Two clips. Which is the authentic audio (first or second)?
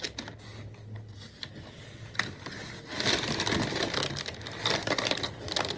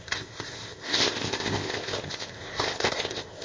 first